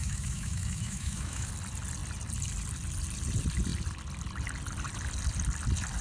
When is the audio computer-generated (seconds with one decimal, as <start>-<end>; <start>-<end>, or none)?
0.0-1.5